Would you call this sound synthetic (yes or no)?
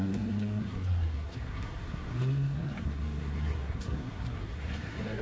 yes